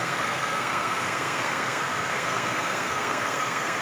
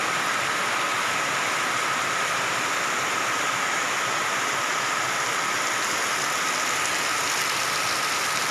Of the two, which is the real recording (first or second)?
second